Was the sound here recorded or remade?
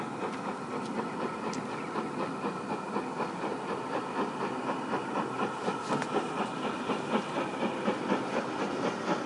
recorded